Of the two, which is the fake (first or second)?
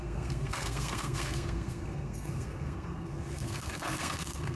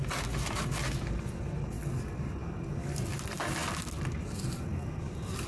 first